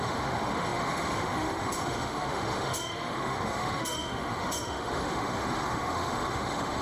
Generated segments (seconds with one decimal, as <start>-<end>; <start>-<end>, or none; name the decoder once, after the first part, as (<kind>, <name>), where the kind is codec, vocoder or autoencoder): 0.0-6.8 (autoencoder, DAC-VAE)